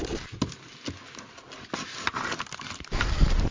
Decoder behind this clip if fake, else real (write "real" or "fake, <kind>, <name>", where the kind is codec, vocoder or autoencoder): real